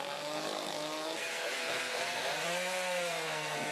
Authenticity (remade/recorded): remade